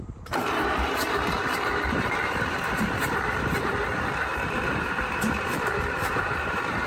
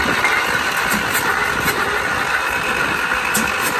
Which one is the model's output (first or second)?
first